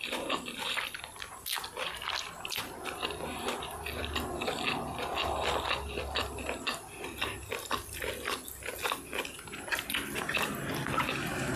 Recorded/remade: recorded